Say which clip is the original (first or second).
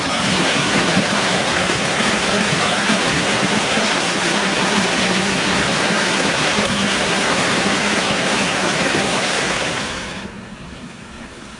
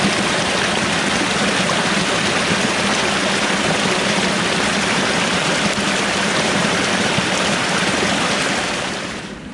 second